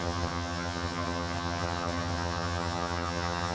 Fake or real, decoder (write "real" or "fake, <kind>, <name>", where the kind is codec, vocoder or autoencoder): fake, vocoder, HiFi-GAN